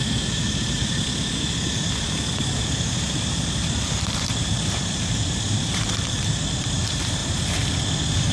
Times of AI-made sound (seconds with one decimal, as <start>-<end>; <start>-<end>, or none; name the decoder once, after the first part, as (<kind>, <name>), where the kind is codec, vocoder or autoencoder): 0.0-0.8 (vocoder, BigVGAN v2); 2.7-7.2